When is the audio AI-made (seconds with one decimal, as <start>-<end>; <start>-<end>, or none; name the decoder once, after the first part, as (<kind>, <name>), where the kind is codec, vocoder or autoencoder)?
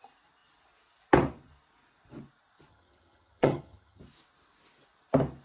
2.7-4.0 (vocoder, HiFi-GAN)